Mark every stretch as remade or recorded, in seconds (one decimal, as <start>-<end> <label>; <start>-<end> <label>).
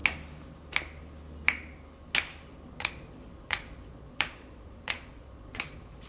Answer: 0.0-2.7 recorded; 2.7-6.1 remade